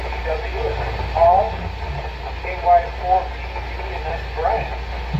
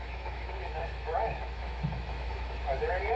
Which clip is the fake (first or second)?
second